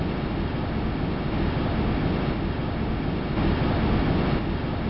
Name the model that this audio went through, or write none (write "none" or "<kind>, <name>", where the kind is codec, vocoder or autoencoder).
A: none